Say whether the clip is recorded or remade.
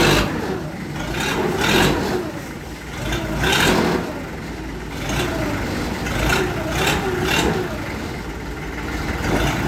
recorded